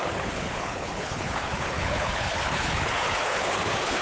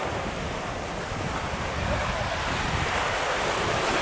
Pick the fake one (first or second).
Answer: first